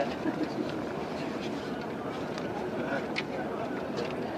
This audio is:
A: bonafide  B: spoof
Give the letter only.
A